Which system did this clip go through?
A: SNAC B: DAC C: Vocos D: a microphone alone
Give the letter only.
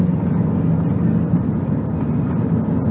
D